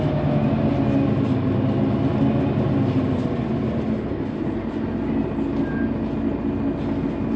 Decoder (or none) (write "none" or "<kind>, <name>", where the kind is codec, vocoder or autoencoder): none